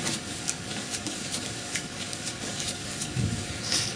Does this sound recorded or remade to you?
remade